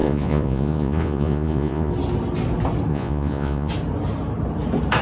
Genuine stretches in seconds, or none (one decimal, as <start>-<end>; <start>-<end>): 1.9-2.9; 3.7-5.0